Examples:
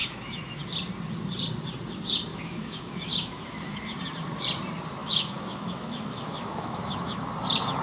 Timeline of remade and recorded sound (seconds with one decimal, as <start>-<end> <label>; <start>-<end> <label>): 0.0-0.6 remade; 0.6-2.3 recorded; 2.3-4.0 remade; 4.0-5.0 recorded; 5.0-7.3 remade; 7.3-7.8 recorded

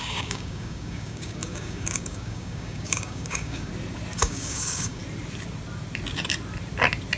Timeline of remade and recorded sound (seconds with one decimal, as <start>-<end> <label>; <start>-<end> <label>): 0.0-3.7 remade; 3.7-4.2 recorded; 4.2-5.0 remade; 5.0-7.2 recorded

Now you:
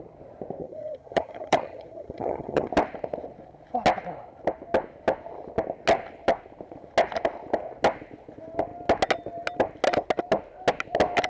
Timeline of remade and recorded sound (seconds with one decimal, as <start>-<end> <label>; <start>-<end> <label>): 0.0-0.6 recorded; 0.6-2.7 remade; 2.7-11.3 recorded